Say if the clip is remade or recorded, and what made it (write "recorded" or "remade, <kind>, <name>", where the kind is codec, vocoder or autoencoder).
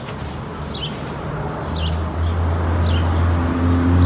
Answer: recorded